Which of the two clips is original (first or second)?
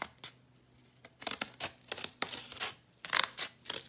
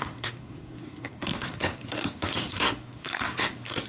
first